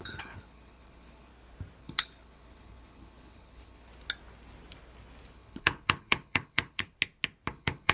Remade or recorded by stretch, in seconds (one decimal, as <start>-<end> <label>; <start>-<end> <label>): 0.0-1.3 remade; 1.3-1.8 recorded; 1.8-3.9 remade; 3.9-5.3 recorded; 5.3-6.9 remade; 6.9-7.5 recorded; 7.5-7.9 remade